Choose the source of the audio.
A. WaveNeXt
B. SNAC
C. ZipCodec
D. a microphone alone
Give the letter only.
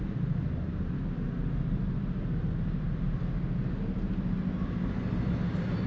D